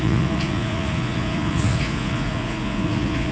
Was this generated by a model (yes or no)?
yes